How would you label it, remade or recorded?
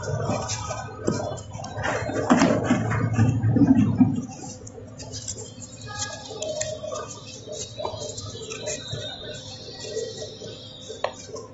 recorded